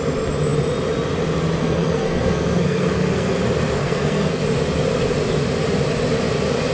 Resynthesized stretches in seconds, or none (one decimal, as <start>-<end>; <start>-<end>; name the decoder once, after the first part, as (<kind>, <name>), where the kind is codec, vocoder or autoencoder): 1.6-3.4 (codec, SNAC); 3.8-4.4